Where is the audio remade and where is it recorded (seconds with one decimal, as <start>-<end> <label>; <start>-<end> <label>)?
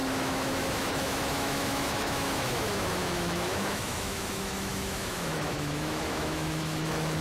0.0-7.2 remade